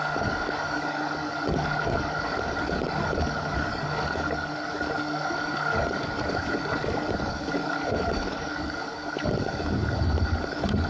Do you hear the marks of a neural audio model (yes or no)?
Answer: yes